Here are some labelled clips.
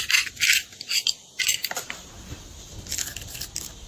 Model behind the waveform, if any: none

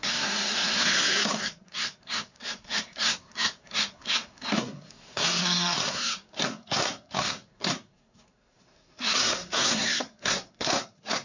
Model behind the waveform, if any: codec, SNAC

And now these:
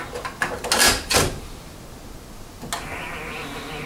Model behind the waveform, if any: none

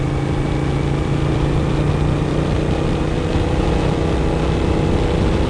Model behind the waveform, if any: none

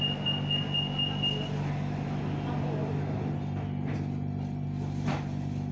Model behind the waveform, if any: none